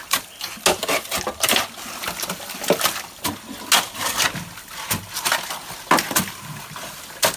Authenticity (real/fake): real